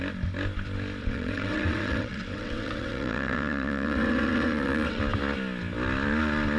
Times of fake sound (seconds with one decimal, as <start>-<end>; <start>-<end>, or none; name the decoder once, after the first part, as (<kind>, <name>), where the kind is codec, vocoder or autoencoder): 1.0-5.0 (vocoder, WaveNeXt)